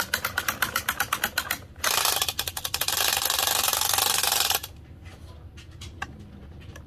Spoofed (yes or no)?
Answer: no